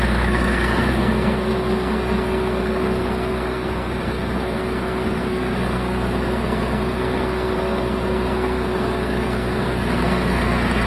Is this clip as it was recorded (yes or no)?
no